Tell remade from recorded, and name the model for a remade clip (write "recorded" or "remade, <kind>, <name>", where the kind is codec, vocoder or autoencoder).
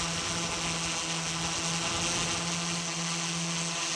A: recorded